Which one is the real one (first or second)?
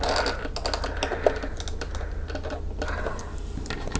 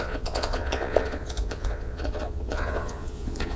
first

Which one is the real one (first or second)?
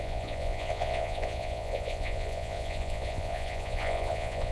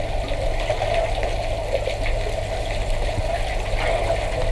second